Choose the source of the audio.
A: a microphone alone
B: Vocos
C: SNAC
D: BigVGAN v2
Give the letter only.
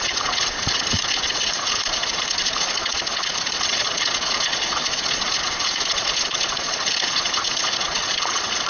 B